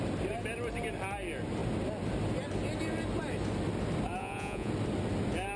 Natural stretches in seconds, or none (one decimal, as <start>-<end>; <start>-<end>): 0.0-4.2; 4.7-5.6